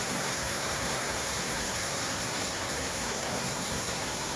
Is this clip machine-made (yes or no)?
yes